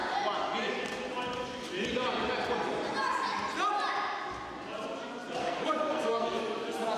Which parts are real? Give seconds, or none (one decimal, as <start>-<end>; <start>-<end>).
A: 0.0-5.4; 6.4-7.0